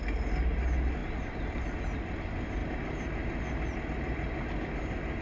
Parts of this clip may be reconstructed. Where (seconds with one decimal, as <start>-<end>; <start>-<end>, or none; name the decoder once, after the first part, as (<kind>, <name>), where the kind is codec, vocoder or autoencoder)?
1.0-1.6 (vocoder, BigVGAN v2)